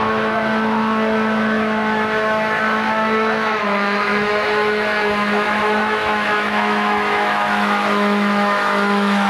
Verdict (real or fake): fake